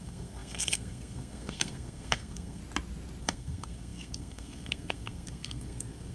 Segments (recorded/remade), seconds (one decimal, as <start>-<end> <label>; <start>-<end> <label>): 0.0-2.6 remade; 2.6-3.2 recorded; 3.2-6.1 remade